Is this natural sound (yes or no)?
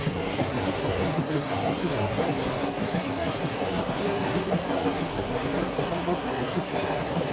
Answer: no